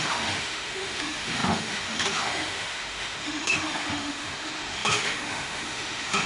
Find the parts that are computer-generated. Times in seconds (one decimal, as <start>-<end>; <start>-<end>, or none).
0.0-6.3